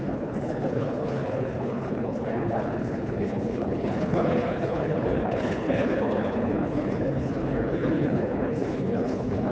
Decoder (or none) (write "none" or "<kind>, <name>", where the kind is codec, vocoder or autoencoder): codec, HILCodec